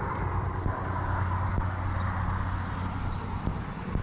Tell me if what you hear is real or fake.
real